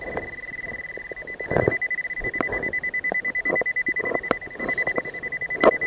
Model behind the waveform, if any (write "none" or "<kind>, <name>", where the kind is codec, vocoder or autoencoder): none